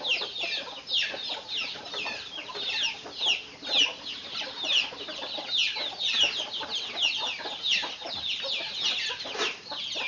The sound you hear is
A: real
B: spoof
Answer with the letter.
A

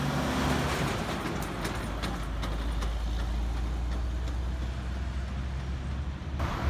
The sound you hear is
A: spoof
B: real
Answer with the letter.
B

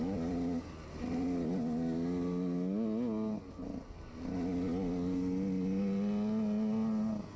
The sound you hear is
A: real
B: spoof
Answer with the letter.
A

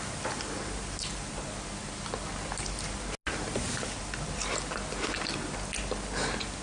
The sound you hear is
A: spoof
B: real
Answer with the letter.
B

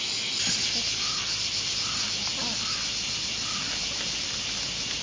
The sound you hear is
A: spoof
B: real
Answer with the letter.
B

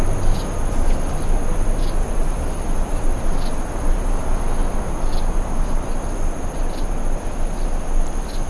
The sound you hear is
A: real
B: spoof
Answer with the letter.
A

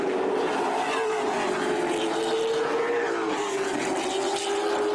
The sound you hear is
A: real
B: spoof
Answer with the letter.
A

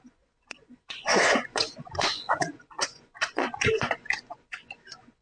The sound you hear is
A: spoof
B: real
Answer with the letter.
A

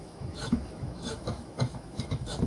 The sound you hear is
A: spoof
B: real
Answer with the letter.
A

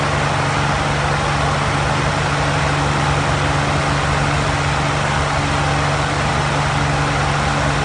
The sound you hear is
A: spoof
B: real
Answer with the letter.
B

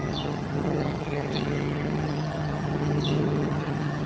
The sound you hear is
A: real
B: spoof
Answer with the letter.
B